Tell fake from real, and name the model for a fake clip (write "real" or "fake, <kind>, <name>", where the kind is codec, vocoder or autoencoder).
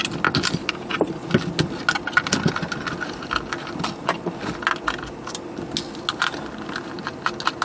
real